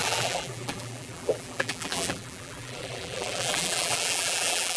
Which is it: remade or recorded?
remade